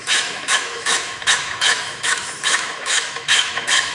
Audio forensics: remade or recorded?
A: remade